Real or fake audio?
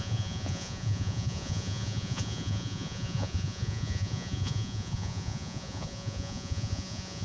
fake